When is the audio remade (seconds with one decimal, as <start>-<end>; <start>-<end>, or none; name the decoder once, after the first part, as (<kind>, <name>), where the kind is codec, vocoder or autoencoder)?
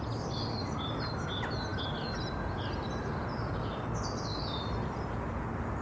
none